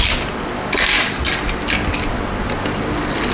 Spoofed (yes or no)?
no